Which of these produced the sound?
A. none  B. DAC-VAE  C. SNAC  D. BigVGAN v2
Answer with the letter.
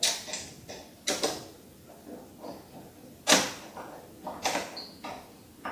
A